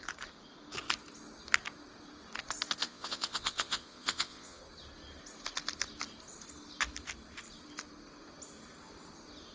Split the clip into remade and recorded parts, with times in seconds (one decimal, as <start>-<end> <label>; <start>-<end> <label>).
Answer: 0.0-2.8 recorded; 2.8-4.6 remade; 4.6-9.5 recorded